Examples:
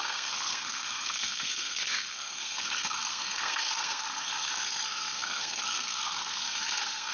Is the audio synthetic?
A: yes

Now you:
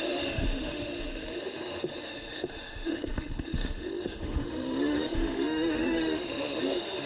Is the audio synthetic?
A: yes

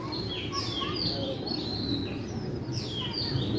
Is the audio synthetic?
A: no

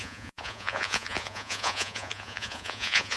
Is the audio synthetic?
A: yes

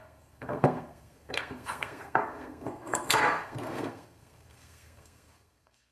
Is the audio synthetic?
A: yes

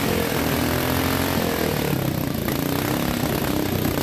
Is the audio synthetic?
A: no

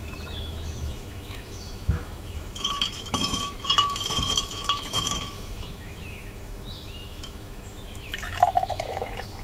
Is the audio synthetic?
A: yes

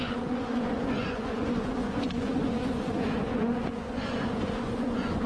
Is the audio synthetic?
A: yes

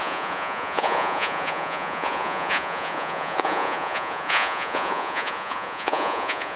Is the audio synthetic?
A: yes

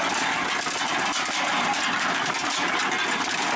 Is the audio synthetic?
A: no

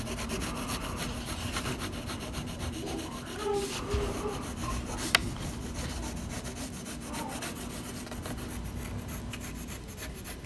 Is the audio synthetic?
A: no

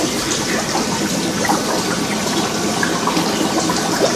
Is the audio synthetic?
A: yes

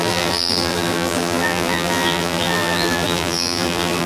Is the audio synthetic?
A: yes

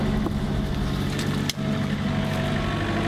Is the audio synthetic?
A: no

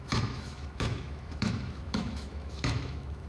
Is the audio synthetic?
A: yes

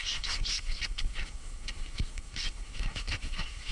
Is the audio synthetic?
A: yes